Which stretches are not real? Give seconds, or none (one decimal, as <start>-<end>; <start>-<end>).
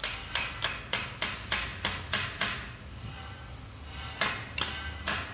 none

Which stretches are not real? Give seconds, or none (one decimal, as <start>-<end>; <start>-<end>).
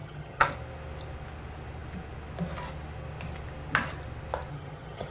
0.0-0.5; 4.5-5.1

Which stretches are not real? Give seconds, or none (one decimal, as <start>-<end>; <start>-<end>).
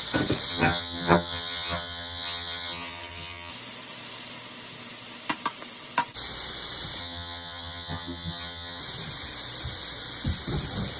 0.5-3.5; 7.0-8.8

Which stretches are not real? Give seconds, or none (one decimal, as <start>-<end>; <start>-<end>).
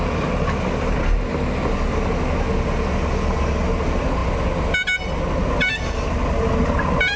none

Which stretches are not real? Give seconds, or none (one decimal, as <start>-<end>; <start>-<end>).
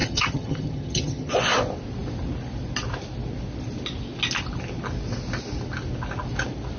0.0-1.3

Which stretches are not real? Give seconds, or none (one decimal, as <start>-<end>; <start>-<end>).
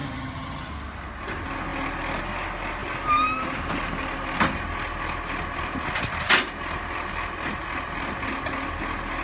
0.0-0.7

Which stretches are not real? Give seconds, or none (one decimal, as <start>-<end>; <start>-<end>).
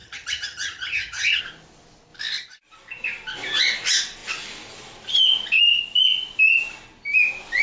0.0-1.4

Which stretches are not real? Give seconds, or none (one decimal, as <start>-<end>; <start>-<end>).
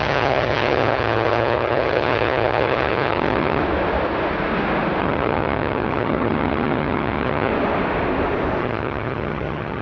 0.0-3.6; 5.0-7.5; 8.6-9.8